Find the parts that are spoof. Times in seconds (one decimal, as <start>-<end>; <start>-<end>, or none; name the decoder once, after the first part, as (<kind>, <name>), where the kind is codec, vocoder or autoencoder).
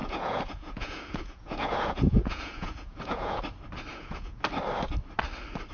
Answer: 0.0-3.4 (vocoder, Vocos); 3.9-4.4